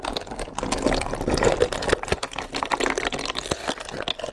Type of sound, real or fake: real